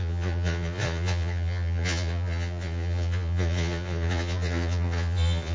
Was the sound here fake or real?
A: fake